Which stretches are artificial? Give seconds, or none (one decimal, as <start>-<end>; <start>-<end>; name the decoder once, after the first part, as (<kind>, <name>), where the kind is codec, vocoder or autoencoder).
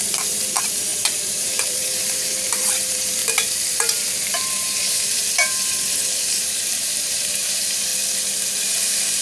0.0-3.2 (vocoder, BigVGAN v2); 3.7-7.9; 8.5-9.2